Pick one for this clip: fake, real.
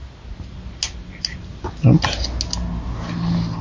real